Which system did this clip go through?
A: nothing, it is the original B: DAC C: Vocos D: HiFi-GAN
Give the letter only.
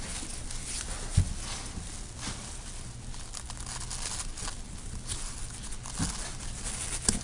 A